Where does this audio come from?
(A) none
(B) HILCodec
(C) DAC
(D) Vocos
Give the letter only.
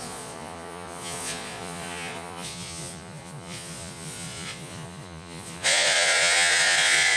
D